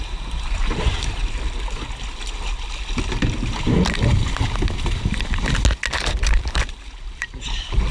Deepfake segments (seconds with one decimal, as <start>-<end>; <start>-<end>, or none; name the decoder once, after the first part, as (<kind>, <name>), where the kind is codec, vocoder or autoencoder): 0.0-1.2 (vocoder, BigVGAN v2); 5.9-7.9